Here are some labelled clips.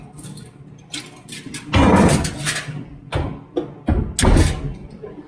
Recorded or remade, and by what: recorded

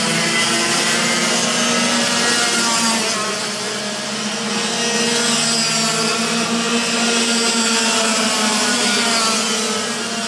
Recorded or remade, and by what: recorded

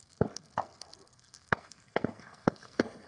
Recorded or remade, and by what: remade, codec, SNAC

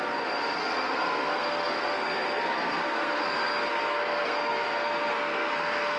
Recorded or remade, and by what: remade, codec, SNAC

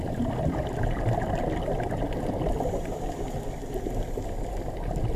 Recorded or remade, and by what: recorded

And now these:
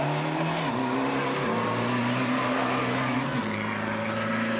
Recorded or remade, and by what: recorded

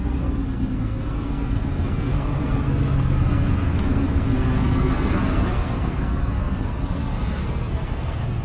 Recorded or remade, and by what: remade, codec, SNAC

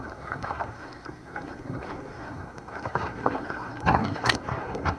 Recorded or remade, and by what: remade, codec, SNAC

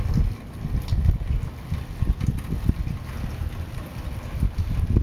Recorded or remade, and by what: recorded